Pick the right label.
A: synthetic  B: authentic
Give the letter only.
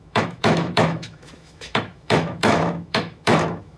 A